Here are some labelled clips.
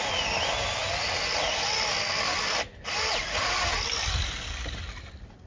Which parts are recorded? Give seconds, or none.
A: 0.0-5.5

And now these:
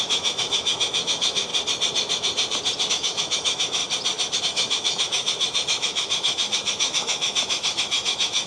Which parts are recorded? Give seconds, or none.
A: 1.5-2.9; 3.8-4.4

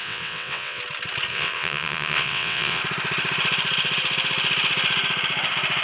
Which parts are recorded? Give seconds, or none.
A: 0.8-1.3; 2.8-5.8

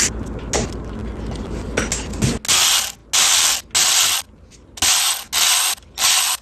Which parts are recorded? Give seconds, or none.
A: 0.0-6.4

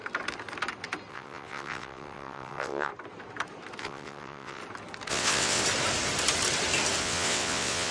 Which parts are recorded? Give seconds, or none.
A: 0.0-1.1; 2.9-3.8; 4.6-5.1; 5.6-7.0

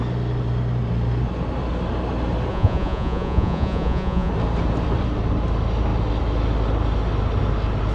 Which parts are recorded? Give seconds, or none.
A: 0.0-2.5; 4.3-7.9

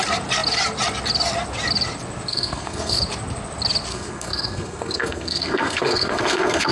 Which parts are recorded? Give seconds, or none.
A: 0.0-2.3; 3.0-3.9